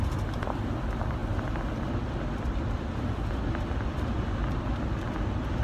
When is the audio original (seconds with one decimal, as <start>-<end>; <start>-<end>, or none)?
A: 0.0-1.2; 4.6-5.6